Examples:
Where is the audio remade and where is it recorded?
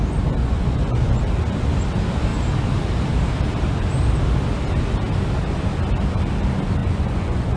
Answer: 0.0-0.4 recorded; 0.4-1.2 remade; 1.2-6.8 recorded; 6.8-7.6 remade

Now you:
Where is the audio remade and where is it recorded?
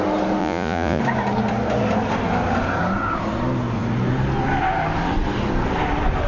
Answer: 0.0-0.4 recorded; 0.4-1.0 remade; 1.0-6.3 recorded